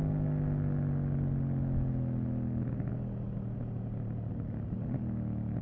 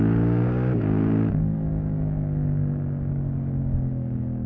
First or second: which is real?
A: first